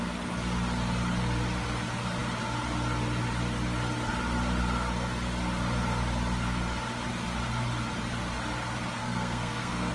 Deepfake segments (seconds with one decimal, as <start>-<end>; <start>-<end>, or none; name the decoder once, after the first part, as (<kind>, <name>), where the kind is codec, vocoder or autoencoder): 9.0-9.9 (codec, SNAC)